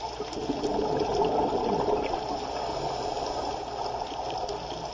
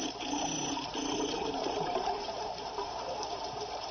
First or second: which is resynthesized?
second